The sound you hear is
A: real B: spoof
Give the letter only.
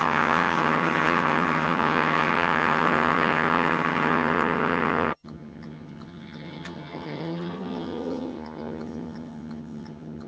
B